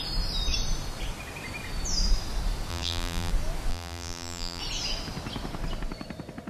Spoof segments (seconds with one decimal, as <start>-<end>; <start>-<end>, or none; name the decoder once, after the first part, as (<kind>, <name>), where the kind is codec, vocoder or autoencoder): 2.7-3.3 (vocoder, BigVGAN v2); 3.7-4.6